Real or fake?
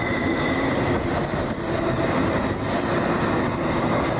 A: real